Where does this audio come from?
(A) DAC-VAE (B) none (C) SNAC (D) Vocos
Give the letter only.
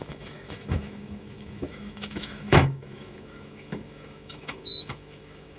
A